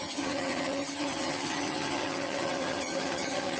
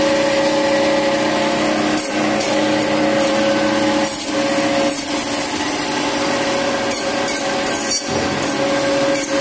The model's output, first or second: first